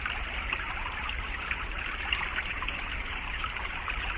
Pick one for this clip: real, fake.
fake